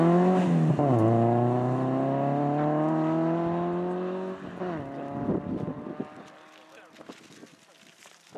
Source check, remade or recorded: recorded